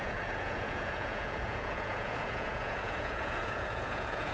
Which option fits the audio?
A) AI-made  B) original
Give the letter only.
A